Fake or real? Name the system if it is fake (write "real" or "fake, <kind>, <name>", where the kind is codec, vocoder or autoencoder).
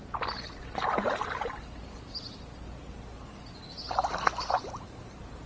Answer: real